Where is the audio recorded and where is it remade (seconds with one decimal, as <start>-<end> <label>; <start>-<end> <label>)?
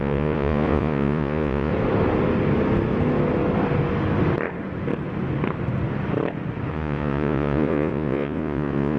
0.0-1.7 remade; 1.7-6.7 recorded; 6.7-9.0 remade